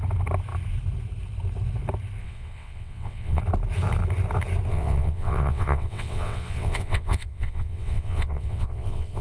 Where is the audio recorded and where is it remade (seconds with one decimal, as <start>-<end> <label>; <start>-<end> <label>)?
0.0-2.2 recorded; 2.2-3.4 remade; 3.4-4.7 recorded; 4.7-9.2 remade